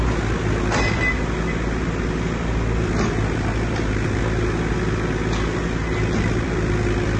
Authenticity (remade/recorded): recorded